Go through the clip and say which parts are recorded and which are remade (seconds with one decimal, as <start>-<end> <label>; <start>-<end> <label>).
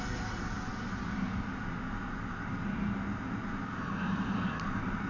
0.0-5.1 recorded